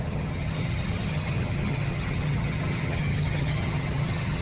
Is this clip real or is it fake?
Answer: fake